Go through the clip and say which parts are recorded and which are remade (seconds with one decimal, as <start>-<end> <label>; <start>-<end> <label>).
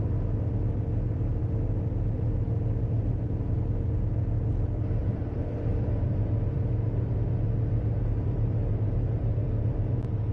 0.0-2.8 recorded; 2.8-3.6 remade; 3.6-5.0 recorded; 5.0-10.3 remade